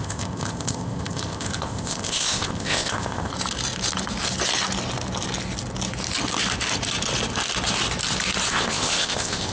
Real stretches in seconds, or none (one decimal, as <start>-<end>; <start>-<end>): 3.3-8.5